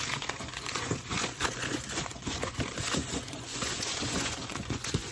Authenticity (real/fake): fake